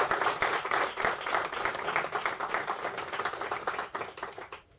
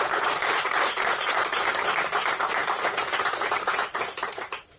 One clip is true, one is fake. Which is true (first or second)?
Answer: first